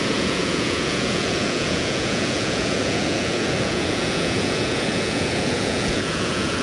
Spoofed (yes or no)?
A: yes